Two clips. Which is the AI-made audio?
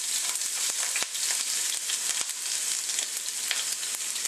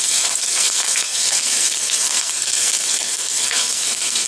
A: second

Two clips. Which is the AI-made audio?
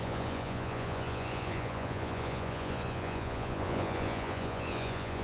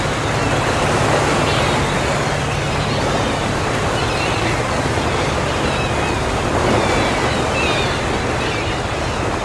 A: first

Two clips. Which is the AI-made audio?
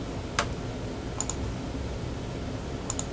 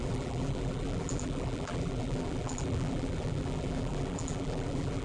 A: second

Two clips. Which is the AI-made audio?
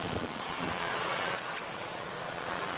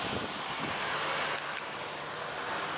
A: first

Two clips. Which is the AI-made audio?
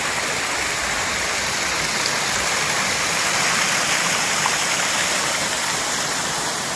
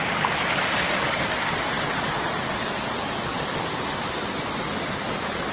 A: second